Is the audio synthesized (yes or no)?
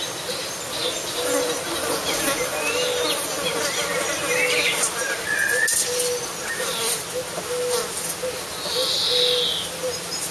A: no